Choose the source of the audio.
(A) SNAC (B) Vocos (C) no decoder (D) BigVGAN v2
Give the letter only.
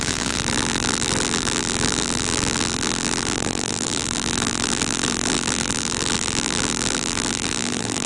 D